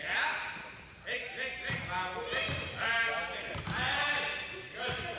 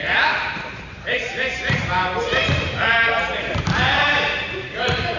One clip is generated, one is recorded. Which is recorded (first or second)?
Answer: first